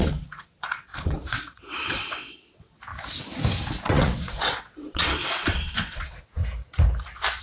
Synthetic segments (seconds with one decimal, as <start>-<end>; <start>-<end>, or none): 0.0-2.9; 3.8-6.4